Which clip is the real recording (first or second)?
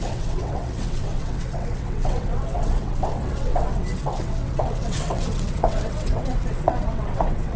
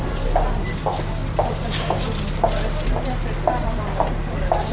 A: second